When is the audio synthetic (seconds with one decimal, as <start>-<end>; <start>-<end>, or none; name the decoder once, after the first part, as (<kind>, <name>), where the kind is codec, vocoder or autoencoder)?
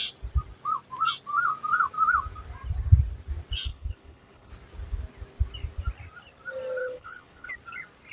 3.7-4.5 (codec, HILCodec); 6.8-7.5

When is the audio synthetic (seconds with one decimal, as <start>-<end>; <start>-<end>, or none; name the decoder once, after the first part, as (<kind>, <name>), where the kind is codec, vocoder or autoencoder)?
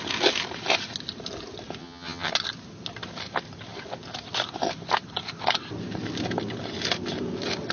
1.8-2.3 (vocoder, HiFi-GAN)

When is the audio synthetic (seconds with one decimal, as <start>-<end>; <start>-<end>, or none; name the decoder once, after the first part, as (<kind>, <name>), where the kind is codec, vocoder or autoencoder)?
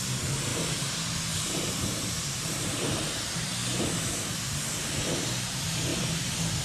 0.0-0.5 (vocoder, BigVGAN v2); 1.3-3.6; 5.4-5.9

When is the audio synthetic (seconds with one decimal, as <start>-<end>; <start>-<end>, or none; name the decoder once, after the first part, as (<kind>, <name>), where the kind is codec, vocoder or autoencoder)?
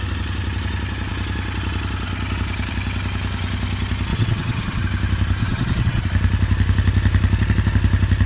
4.1-4.8 (vocoder, HiFi-GAN); 5.4-6.0